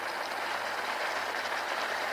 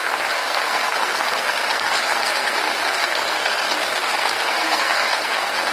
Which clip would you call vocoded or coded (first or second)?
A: second